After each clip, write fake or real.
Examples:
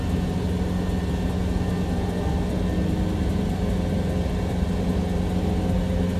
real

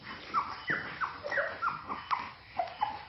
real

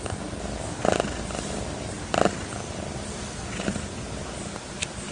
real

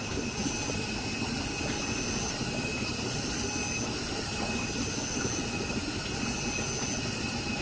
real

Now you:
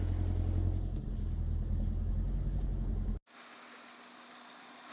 real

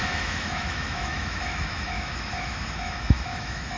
fake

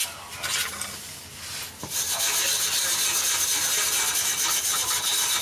real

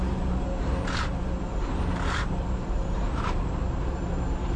fake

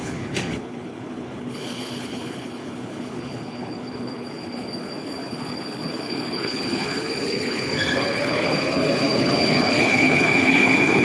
fake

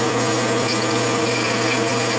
real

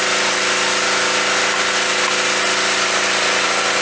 real